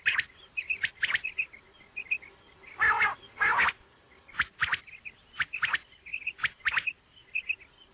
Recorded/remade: recorded